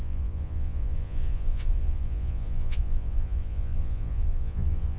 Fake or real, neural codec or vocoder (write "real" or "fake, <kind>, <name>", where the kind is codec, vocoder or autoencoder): fake, vocoder, Vocos